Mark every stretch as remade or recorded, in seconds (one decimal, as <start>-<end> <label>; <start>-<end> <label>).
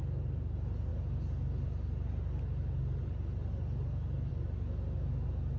0.0-5.6 recorded